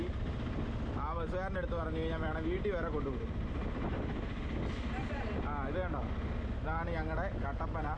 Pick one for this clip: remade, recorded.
recorded